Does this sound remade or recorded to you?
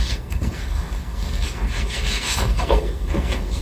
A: remade